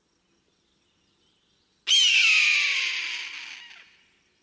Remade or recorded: recorded